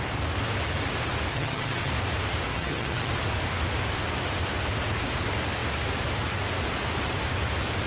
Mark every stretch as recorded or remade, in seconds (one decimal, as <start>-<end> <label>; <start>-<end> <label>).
0.0-1.3 recorded; 1.3-1.9 remade; 1.9-2.5 recorded; 2.5-3.1 remade; 3.1-7.9 recorded